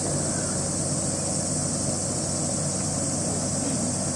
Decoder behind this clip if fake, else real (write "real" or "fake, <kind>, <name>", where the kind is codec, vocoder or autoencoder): real